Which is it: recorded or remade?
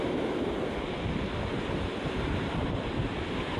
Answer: recorded